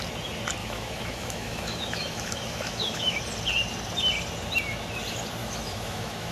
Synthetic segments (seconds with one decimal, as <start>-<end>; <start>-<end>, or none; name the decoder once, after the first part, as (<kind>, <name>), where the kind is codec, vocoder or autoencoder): 0.6-3.2 (autoencoder, DAC-VAE); 5.4-6.3